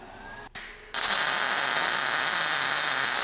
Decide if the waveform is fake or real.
real